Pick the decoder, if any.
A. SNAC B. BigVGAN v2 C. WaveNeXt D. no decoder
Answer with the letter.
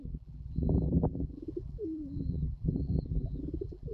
B